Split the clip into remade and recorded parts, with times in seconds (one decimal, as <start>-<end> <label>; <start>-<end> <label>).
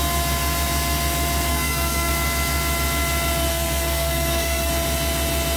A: 0.0-1.5 recorded; 1.5-2.1 remade; 2.1-3.5 recorded; 3.5-4.7 remade; 4.7-5.6 recorded